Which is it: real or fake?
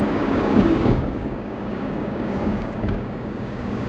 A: fake